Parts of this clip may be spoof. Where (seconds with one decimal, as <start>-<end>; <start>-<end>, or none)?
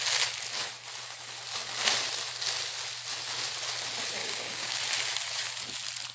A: 4.2-4.8